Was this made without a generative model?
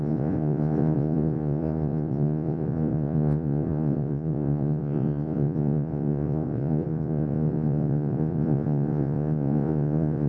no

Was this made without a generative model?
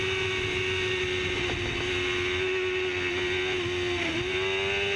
yes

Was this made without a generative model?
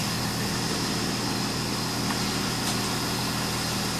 yes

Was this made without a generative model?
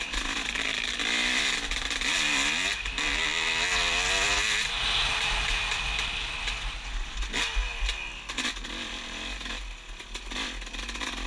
yes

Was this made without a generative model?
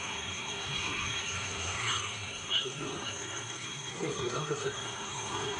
no